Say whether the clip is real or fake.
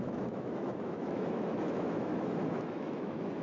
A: fake